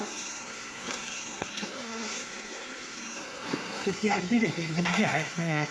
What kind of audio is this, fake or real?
fake